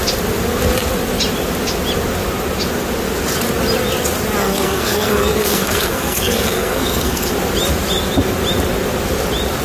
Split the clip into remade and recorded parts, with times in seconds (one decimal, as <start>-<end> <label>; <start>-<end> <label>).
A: 0.0-4.4 recorded; 4.4-7.3 remade; 7.3-9.6 recorded